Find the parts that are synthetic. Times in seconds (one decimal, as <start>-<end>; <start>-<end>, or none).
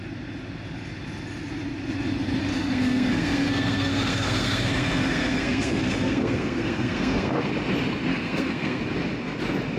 2.5-7.5; 8.1-8.8